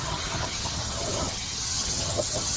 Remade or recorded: remade